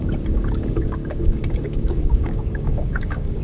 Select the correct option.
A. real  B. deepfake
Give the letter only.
B